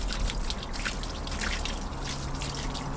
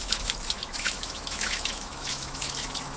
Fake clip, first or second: second